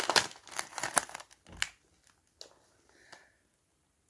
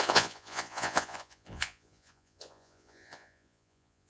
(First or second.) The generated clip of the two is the second